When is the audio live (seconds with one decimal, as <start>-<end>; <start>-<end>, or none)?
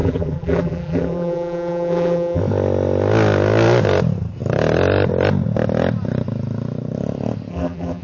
2.4-7.5